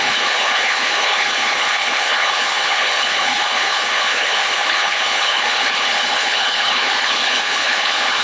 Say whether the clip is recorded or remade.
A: remade